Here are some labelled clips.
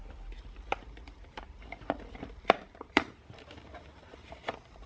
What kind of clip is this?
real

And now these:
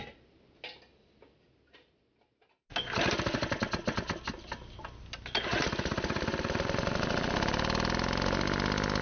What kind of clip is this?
real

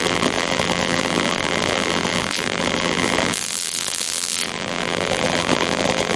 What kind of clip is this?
fake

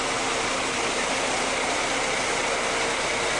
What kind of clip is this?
real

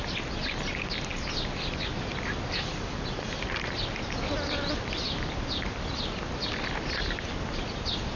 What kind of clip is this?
real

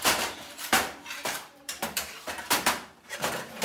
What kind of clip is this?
fake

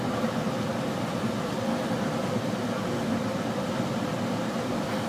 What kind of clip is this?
real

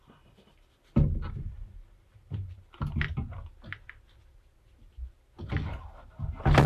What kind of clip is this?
real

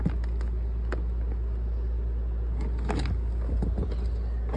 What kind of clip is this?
real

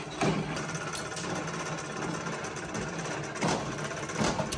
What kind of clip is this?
real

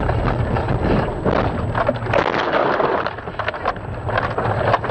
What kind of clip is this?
real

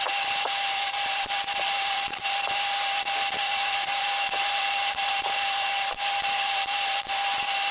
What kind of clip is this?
fake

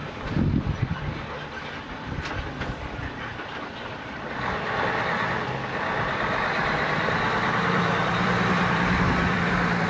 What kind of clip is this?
fake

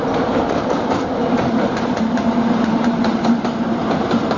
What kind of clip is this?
fake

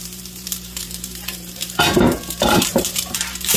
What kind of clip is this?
fake